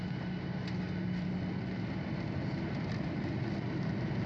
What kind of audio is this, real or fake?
real